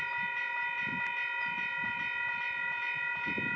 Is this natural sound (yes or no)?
yes